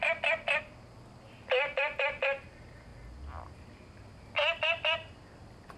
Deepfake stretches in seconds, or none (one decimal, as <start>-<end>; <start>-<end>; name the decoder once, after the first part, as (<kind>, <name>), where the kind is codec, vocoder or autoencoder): none